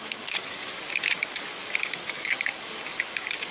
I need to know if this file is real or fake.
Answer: fake